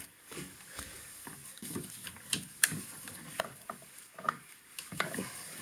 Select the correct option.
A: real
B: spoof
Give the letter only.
B